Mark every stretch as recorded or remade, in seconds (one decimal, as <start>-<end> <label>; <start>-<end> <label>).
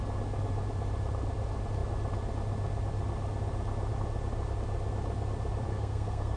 0.0-5.7 recorded; 5.7-6.4 remade